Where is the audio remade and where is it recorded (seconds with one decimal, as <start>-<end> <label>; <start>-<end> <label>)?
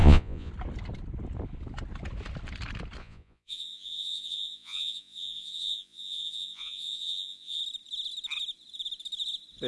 0.0-0.5 remade; 0.5-3.0 recorded; 3.0-7.6 remade; 7.6-9.7 recorded